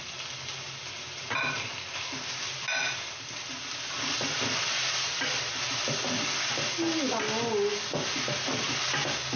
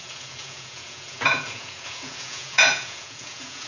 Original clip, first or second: first